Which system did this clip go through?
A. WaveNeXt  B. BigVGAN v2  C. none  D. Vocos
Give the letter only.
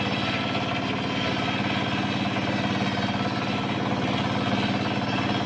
C